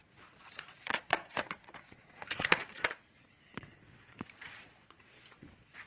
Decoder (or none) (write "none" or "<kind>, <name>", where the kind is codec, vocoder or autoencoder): vocoder, Vocos